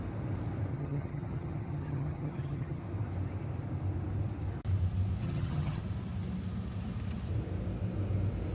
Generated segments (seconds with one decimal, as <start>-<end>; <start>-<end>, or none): 0.7-2.8; 5.2-5.8